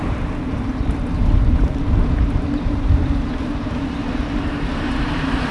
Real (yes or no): no